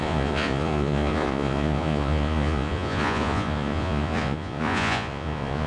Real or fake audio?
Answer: fake